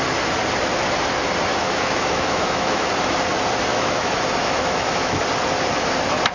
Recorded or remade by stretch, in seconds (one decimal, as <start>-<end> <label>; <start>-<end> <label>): 0.0-1.5 recorded; 1.5-2.9 remade; 2.9-3.7 recorded; 3.7-5.2 remade; 5.2-6.3 recorded

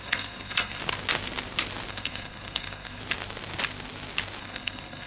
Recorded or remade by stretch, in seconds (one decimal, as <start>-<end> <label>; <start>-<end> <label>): 0.0-0.8 remade; 0.8-1.9 recorded; 1.9-3.0 remade; 3.0-4.4 recorded; 4.4-5.1 remade

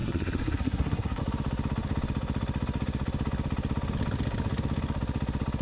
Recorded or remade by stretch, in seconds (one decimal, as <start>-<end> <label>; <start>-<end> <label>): 0.0-1.2 remade; 1.2-5.6 recorded

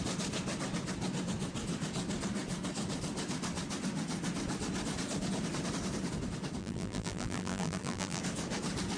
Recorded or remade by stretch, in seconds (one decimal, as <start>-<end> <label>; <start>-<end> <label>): 0.0-6.6 recorded; 6.6-8.2 remade; 8.2-9.0 recorded

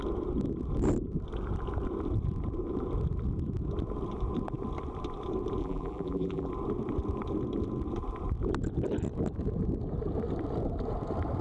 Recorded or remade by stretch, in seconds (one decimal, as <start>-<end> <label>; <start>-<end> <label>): 0.0-5.6 recorded; 5.6-6.5 remade; 6.5-11.4 recorded

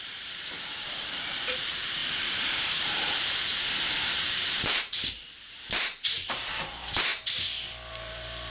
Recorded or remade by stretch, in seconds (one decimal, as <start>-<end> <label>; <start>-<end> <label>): 0.0-7.1 remade; 7.1-7.9 recorded; 7.9-8.5 remade

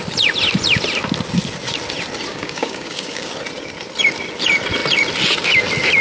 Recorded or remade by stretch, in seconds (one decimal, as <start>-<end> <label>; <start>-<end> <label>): 0.0-2.3 recorded; 2.3-3.3 remade; 3.3-6.0 recorded